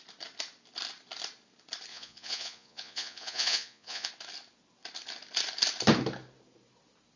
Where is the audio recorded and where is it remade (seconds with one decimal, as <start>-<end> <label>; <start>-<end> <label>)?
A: 0.0-1.9 recorded; 1.9-4.1 remade; 4.1-7.2 recorded